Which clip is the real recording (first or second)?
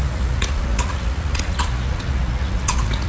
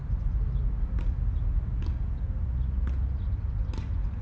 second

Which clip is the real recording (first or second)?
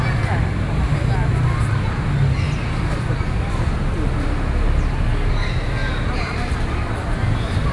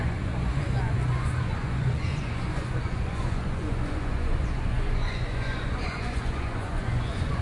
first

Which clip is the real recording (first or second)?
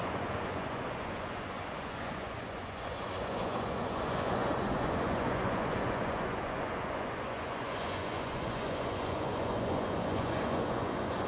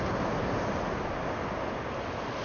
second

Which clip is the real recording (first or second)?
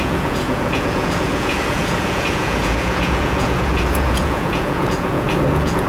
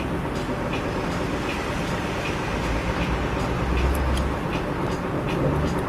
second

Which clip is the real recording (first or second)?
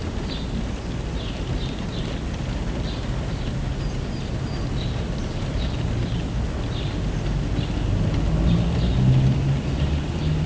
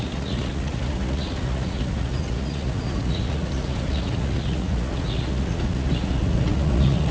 first